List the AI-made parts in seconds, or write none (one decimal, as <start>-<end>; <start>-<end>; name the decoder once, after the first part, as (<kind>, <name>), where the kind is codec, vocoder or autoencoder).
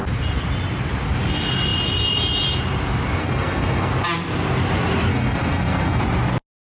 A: 3.2-3.9 (codec, SNAC); 5.1-6.0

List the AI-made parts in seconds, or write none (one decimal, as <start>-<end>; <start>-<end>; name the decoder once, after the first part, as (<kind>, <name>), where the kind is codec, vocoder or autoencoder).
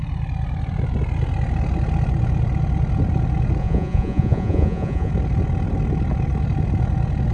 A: 3.6-5.1 (vocoder, Vocos)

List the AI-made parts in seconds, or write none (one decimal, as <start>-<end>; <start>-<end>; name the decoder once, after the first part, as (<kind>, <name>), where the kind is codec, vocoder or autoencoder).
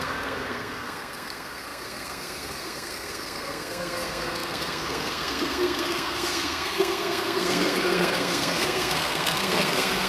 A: 0.0-10.1 (codec, SNAC)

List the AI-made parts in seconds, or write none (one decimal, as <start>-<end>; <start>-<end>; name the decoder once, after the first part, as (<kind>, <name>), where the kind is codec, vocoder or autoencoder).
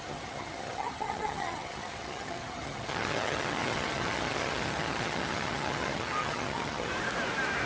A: 0.0-6.9 (vocoder, HiFi-GAN)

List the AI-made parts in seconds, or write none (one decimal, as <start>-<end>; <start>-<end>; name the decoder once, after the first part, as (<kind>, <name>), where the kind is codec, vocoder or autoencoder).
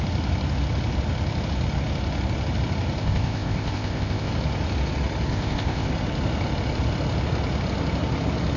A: 3.0-4.3 (codec, ZipCodec); 5.3-5.9